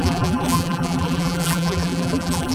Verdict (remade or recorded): remade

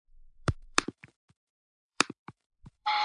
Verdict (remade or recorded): remade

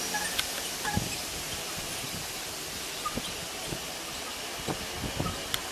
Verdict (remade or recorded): recorded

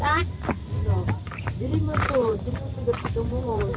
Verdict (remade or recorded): remade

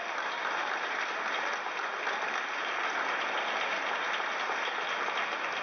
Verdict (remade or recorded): recorded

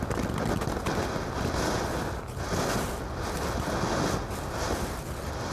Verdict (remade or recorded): recorded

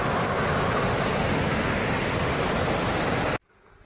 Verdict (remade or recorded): recorded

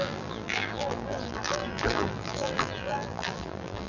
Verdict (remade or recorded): remade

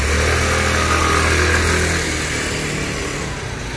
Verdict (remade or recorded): recorded